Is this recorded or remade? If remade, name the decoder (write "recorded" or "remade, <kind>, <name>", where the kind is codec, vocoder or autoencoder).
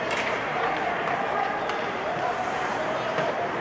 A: remade, vocoder, BigVGAN v2